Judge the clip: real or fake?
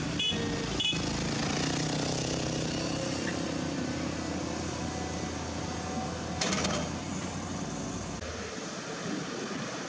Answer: real